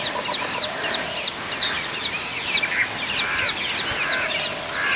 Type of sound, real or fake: real